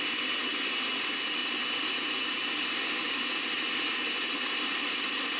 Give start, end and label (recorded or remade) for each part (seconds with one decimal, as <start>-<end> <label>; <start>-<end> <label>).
0.0-0.4 remade; 0.4-0.9 recorded; 0.9-1.4 remade; 1.4-4.6 recorded; 4.6-5.4 remade